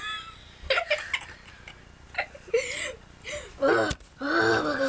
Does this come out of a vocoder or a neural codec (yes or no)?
no